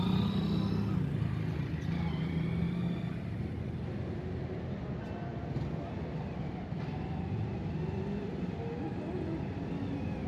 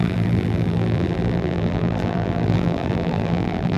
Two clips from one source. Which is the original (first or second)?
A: first